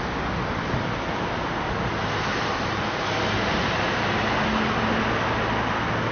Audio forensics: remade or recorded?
recorded